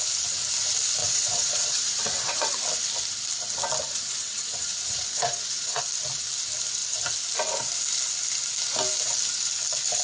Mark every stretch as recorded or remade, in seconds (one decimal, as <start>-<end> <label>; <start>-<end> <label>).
0.0-1.0 recorded; 1.0-2.6 remade; 2.6-3.9 recorded; 3.9-5.8 remade; 5.8-10.0 recorded